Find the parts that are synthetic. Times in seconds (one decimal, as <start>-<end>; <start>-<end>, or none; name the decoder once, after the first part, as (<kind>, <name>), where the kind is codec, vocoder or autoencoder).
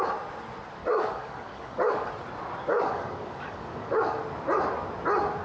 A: 0.8-2.1 (codec, DAC); 2.7-4.2